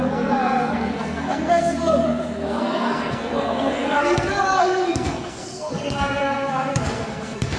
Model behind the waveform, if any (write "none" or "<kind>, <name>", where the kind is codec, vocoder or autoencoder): codec, SNAC